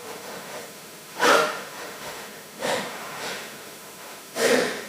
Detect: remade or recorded remade